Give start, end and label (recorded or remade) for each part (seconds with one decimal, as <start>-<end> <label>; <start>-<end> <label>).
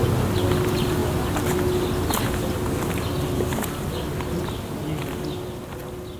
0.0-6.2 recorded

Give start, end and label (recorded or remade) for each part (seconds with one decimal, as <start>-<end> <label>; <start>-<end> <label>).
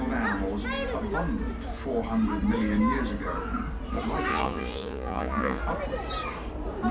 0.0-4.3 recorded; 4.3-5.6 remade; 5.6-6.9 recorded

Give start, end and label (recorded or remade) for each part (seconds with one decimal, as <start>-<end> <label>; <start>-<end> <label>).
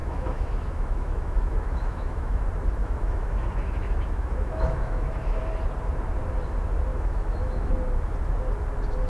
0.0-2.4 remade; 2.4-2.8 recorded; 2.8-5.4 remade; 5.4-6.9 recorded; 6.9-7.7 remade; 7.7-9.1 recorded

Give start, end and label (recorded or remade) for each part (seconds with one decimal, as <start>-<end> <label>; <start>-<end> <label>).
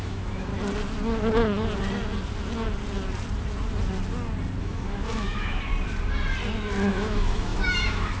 0.0-0.5 remade; 0.5-4.6 recorded; 4.6-5.7 remade; 5.7-6.9 recorded; 6.9-8.2 remade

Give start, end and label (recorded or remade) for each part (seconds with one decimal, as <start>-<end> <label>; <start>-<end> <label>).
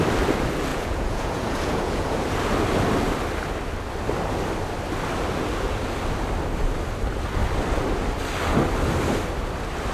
0.0-0.7 recorded; 0.7-2.2 remade; 2.2-9.9 recorded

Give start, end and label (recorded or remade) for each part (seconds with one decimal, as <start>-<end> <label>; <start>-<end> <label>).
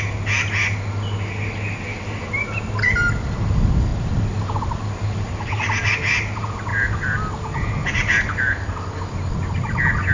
0.0-10.1 recorded